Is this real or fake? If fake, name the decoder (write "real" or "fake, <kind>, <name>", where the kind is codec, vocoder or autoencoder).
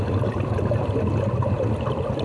real